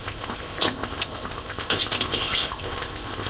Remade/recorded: remade